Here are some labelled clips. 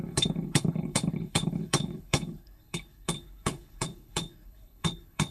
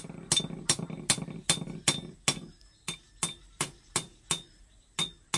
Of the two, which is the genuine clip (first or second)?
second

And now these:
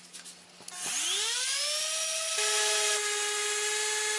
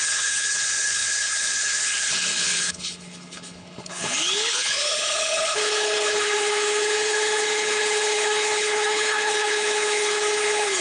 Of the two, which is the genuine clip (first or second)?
first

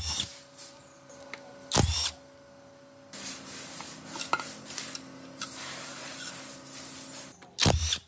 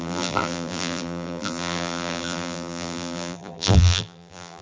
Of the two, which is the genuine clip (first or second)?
first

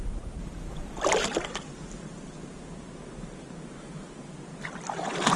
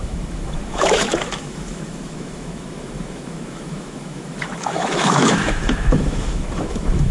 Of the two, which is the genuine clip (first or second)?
first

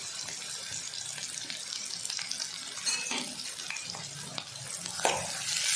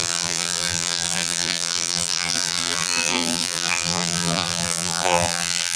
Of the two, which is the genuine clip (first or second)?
first